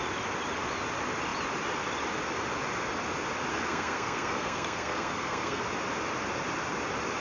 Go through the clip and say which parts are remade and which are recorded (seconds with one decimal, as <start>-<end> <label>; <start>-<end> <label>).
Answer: 0.0-3.5 recorded; 3.5-5.6 remade; 5.6-7.2 recorded